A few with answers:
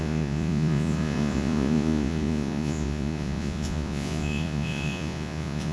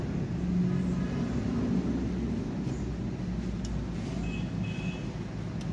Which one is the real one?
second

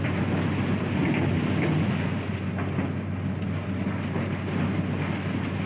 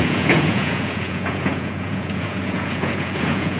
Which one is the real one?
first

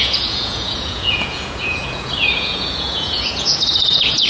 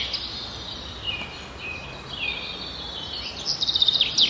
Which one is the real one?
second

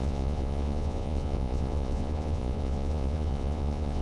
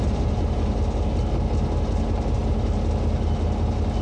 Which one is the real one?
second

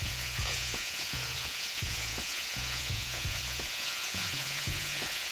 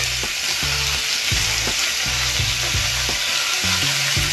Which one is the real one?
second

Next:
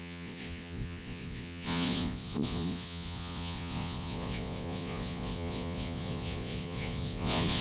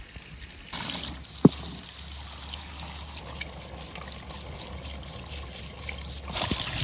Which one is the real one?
second